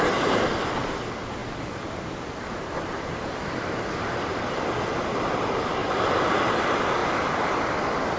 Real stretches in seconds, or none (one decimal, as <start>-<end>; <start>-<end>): 0.0-1.4; 3.7-5.8; 6.5-7.0; 7.6-8.2